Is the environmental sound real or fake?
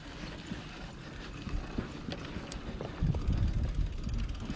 real